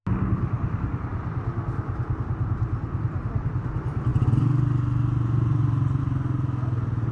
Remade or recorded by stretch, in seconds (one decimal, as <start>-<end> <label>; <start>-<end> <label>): 0.0-7.1 recorded